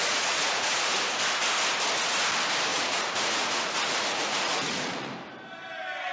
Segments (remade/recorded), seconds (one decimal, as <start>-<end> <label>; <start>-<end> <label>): 0.0-1.0 remade; 1.0-2.7 recorded; 2.7-5.1 remade; 5.1-6.1 recorded